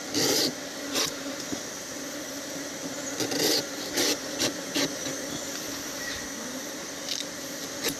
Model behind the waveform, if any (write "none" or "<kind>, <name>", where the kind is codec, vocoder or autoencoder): none